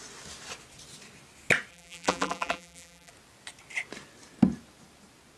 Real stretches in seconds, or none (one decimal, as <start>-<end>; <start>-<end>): 0.0-1.7; 3.1-5.4